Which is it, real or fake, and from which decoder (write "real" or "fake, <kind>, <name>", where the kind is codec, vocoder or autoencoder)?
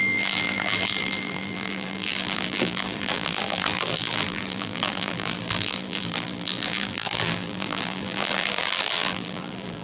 fake, vocoder, BigVGAN v2